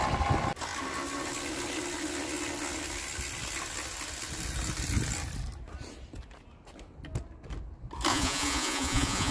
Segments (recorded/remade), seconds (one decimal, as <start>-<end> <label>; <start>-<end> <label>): 0.0-8.1 recorded; 8.1-9.3 remade